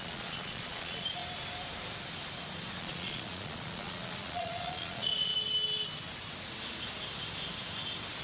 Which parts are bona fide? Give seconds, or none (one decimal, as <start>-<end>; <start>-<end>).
1.2-2.8; 5.3-8.2